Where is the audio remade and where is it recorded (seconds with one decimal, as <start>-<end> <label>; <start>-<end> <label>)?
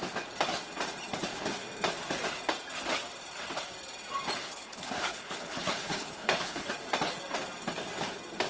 0.0-4.4 recorded; 4.4-6.7 remade; 6.7-8.5 recorded